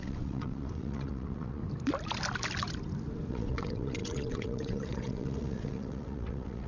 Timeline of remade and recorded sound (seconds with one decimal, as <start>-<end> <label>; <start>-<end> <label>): 0.0-1.6 remade; 1.6-3.3 recorded; 3.3-6.7 remade